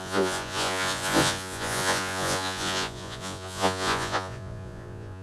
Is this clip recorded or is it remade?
remade